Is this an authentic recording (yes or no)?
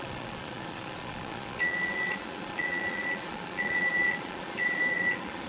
no